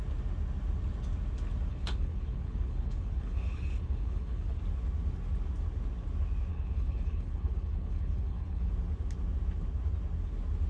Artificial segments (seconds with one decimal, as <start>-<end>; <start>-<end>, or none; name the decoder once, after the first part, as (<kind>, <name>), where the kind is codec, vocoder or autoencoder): 1.7-4.6 (codec, HILCodec); 6.5-8.7